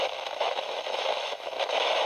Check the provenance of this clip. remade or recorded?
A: remade